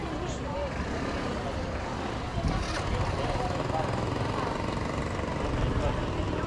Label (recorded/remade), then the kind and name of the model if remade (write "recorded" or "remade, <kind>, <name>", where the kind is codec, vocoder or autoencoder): recorded